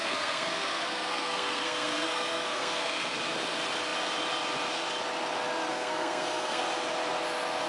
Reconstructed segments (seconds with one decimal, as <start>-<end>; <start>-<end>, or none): 0.0-3.2; 5.7-6.6